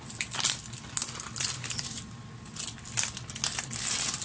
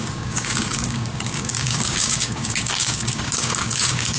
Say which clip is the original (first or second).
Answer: first